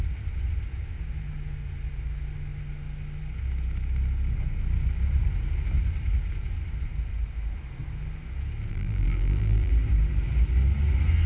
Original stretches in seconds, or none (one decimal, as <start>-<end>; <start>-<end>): 0.0-8.7; 9.7-11.3